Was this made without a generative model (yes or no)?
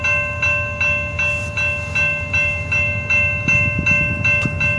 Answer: yes